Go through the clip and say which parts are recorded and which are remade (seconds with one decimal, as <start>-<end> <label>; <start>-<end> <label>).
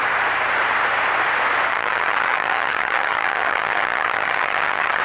0.0-1.7 recorded; 1.7-5.0 remade